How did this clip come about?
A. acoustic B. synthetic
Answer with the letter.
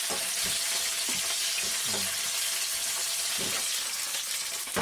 A